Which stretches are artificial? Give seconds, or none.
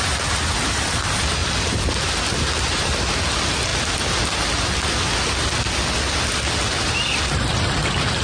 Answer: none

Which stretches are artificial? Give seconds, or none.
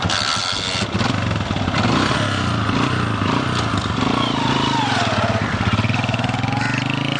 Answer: none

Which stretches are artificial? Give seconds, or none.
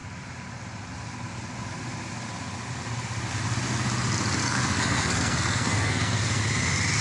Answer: 4.4-6.4 (codec, SNAC)